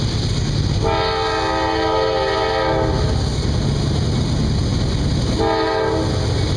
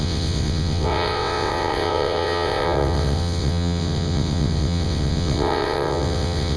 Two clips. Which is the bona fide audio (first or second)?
first